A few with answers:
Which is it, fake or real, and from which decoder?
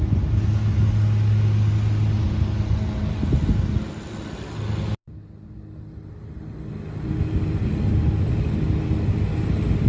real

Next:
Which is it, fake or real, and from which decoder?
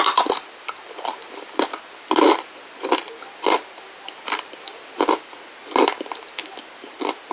real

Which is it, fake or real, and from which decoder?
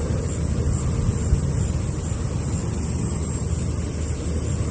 real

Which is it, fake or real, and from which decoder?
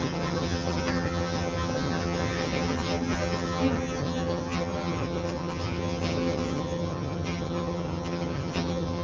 fake, vocoder, HiFi-GAN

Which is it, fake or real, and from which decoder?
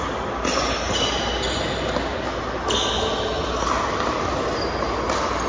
real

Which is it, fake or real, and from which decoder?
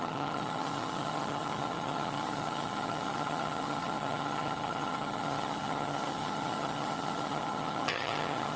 fake, vocoder, HiFi-GAN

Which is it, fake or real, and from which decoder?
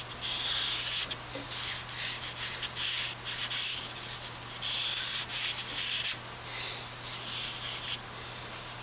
real